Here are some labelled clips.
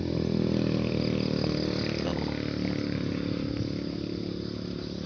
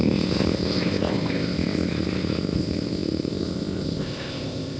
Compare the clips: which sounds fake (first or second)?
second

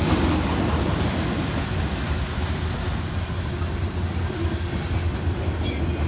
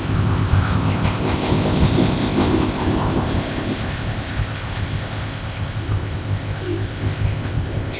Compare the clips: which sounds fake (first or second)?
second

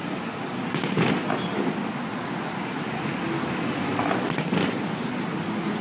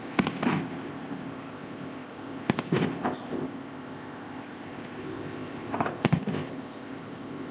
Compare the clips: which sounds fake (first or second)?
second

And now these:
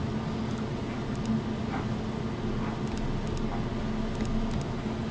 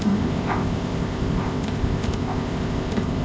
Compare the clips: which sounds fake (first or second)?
second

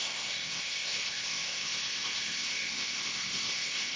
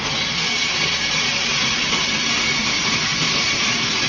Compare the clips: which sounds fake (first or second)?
first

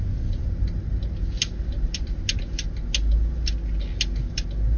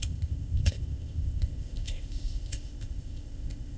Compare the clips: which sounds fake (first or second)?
second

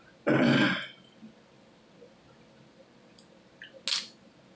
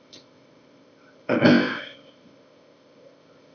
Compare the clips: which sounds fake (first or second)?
second